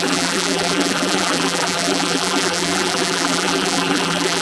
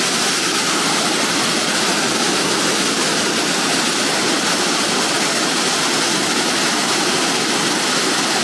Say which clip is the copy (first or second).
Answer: first